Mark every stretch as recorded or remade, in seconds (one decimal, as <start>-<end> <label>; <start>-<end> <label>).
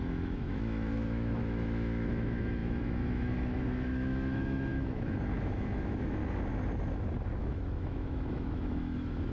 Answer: 0.0-6.2 remade; 6.2-7.4 recorded; 7.4-9.3 remade